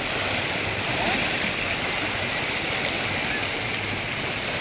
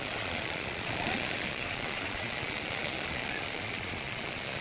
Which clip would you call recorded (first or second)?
first